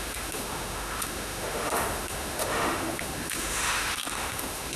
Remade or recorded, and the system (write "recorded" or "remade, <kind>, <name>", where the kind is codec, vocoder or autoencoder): remade, autoencoder, DAC-VAE